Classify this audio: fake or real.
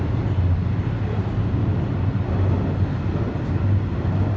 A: real